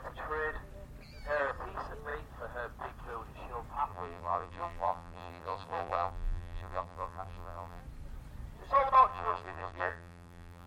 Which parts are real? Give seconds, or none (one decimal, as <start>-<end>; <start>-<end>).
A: 0.0-3.9; 7.8-9.1